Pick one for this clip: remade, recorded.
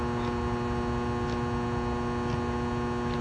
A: recorded